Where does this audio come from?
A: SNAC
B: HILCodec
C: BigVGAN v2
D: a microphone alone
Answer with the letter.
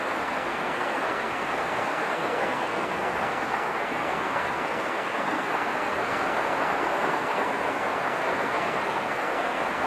A